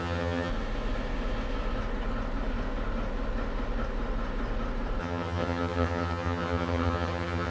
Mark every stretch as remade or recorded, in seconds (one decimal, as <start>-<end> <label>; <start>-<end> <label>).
0.0-0.5 remade; 0.5-5.0 recorded; 5.0-7.5 remade